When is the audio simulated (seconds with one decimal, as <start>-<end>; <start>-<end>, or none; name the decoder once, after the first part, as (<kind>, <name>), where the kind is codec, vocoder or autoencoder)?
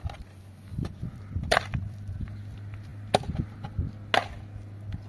0.7-2.2 (vocoder, BigVGAN v2)